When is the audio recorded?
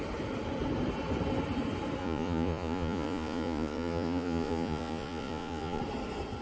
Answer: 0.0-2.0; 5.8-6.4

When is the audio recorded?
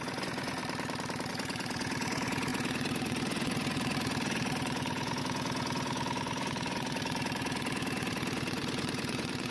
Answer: 0.6-1.3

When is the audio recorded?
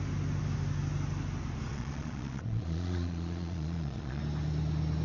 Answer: 0.0-1.7; 4.2-5.0